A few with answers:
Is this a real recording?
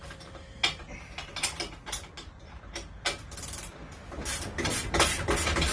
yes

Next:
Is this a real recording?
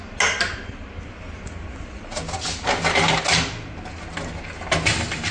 yes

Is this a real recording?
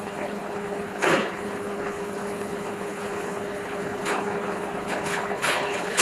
no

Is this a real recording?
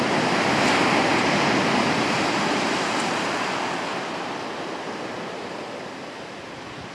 yes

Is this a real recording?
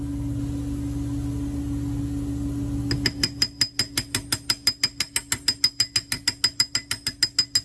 yes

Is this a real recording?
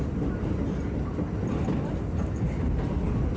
yes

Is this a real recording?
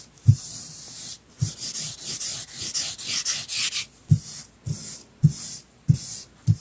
yes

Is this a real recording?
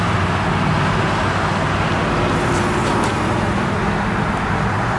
yes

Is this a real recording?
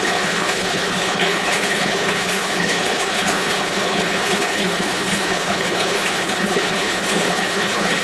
no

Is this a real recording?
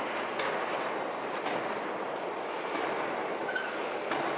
yes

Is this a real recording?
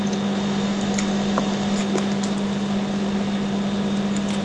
yes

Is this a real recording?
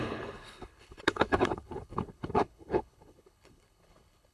no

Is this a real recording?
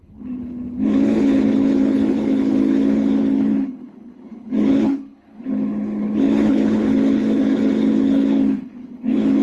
no